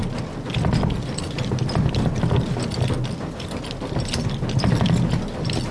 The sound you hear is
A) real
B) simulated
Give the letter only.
A